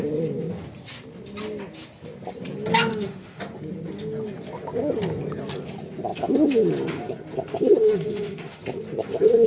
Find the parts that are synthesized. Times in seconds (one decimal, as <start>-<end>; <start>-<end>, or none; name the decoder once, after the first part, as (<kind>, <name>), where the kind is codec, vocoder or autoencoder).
2.9-3.4 (autoencoder, DAC-VAE); 7.8-8.6